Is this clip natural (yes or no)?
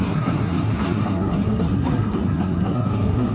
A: no